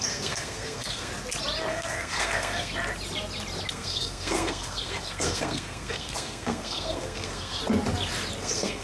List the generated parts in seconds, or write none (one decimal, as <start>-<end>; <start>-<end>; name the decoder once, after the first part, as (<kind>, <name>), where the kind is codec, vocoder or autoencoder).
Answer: 0.0-1.1 (codec, SNAC); 1.7-2.7; 3.7-7.6; 8.4-8.8